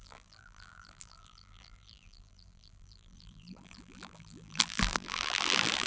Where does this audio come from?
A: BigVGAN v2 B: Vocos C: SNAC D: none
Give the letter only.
A